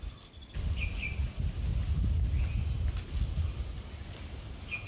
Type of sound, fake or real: real